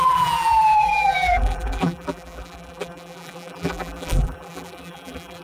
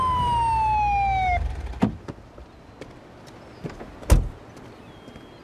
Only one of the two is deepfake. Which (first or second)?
first